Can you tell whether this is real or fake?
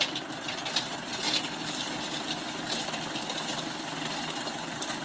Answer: real